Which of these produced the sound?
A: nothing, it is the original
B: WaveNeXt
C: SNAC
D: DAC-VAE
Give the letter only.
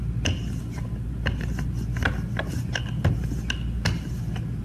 A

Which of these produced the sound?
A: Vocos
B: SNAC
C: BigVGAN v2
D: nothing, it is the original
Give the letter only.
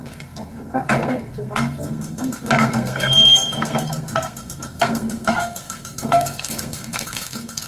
B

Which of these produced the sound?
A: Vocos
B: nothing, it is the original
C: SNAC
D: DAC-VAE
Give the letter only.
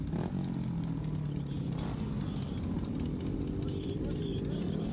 B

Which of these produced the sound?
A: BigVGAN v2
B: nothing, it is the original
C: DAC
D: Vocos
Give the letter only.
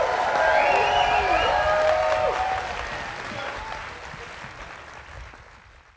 B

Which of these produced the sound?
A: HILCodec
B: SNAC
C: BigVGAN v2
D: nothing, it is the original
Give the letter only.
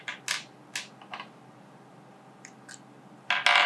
D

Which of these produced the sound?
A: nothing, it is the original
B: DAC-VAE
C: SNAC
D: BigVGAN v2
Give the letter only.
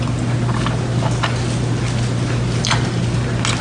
A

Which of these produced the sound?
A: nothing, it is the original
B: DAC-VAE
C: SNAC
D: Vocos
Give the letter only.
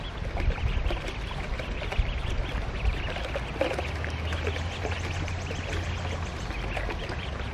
A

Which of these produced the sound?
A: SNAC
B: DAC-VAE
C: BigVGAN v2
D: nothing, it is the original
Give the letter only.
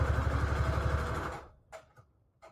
D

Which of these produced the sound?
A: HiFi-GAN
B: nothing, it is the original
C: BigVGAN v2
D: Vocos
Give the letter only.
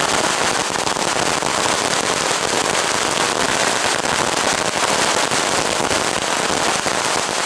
B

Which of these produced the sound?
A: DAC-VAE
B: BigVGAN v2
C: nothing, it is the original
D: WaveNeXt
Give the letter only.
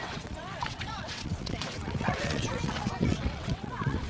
D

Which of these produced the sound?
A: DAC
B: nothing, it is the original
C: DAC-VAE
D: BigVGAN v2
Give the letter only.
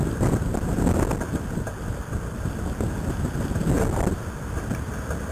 B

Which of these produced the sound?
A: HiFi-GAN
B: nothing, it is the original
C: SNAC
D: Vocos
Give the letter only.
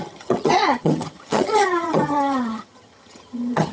A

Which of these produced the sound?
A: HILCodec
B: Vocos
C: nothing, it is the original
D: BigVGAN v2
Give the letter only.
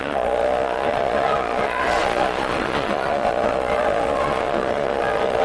B